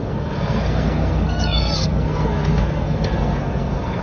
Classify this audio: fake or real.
fake